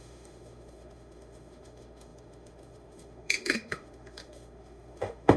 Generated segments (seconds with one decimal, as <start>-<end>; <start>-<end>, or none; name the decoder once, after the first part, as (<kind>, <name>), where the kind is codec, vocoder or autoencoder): 0.0-5.4 (autoencoder, DAC-VAE)

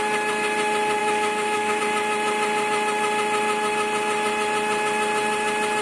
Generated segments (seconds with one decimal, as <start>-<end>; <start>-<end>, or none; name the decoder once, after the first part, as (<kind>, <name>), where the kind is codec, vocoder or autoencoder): 1.0-1.8 (autoencoder, DAC-VAE)